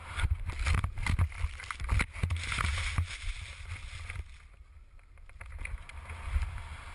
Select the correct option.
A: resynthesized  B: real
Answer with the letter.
B